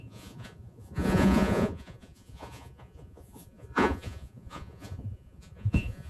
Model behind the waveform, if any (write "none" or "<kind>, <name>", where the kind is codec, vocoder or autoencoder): vocoder, Vocos